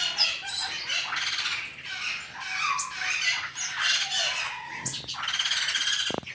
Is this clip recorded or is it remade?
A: recorded